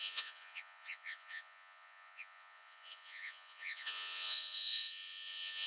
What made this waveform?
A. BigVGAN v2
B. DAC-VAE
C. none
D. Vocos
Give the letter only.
D